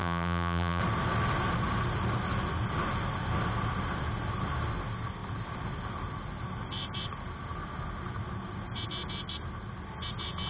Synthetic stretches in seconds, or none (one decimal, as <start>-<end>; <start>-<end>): 0.0-0.8